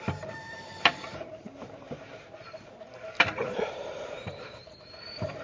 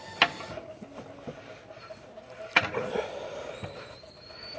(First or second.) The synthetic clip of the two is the first